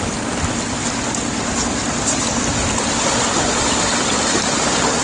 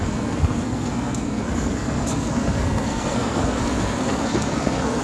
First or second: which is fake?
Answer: second